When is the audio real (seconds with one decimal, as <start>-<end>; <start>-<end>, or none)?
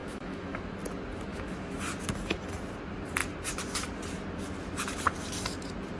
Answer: 0.6-1.3; 1.8-6.0